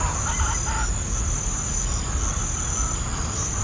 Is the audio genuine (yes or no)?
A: yes